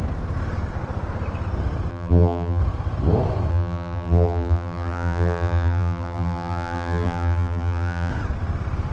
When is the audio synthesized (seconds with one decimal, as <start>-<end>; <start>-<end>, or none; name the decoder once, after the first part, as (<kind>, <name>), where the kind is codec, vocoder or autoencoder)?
1.9-2.6 (vocoder, BigVGAN v2); 3.5-8.1